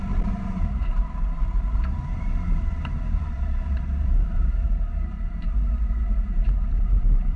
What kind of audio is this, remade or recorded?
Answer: remade